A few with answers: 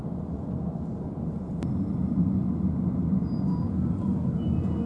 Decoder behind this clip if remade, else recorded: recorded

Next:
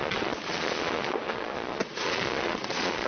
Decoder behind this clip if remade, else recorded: remade, vocoder, Vocos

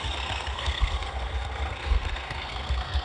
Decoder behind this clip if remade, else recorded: remade, codec, SNAC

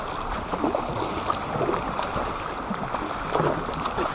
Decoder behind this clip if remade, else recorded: recorded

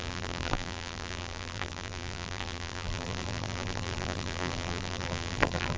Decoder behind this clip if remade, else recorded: remade, vocoder, BigVGAN v2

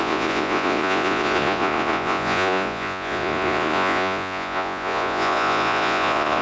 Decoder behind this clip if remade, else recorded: remade, vocoder, Vocos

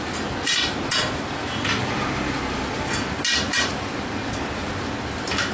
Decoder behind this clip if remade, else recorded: recorded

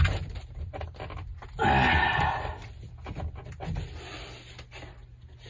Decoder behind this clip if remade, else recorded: recorded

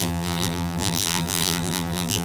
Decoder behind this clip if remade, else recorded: remade, vocoder, BigVGAN v2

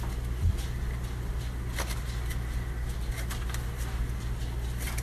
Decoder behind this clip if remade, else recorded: recorded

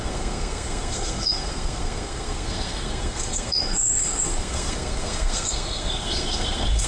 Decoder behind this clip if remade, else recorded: remade, codec, SNAC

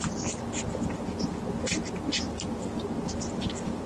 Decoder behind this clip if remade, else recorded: recorded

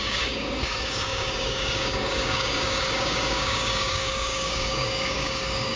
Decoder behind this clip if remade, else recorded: remade, codec, DAC